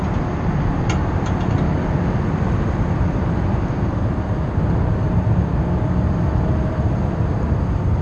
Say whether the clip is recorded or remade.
remade